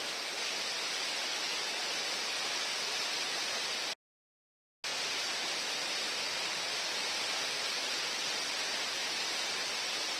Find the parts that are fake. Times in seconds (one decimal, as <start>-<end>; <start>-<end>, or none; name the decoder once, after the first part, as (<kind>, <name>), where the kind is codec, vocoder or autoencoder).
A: none

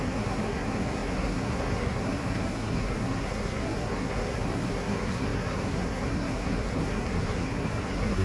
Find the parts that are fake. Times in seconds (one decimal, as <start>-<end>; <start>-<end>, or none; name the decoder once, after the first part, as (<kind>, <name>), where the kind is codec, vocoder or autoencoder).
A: 0.0-8.2 (codec, SNAC)

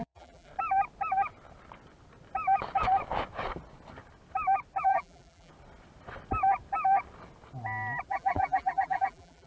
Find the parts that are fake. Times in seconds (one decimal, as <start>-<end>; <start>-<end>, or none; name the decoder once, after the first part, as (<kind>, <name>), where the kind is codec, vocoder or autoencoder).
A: 0.0-0.5 (vocoder, BigVGAN v2); 4.8-5.5; 8.1-9.5

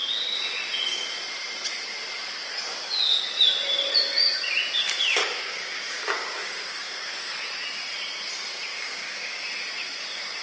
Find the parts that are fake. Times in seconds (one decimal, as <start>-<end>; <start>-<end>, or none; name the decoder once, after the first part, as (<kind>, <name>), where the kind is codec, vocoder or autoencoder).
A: 5.2-7.5 (codec, DAC); 8.7-9.4

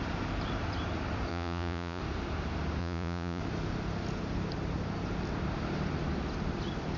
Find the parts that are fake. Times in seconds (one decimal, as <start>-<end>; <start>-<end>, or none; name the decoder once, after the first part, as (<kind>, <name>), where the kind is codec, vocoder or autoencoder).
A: 1.3-2.0 (vocoder, Vocos); 2.8-3.4

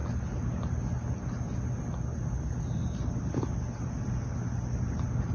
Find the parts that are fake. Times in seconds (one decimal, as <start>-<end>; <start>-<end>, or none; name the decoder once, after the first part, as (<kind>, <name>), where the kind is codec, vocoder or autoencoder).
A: none